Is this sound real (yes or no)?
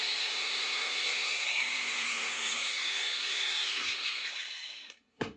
no